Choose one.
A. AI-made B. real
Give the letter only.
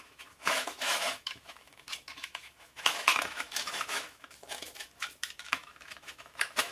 A